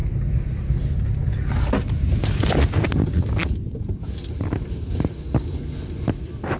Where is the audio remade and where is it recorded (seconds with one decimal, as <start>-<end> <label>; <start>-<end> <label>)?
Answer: 0.0-6.6 recorded